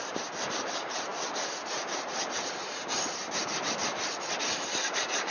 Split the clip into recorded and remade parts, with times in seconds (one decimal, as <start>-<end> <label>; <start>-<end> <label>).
0.0-3.8 remade; 3.8-4.4 recorded; 4.4-5.3 remade